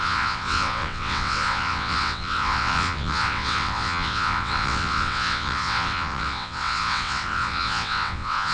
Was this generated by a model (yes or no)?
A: yes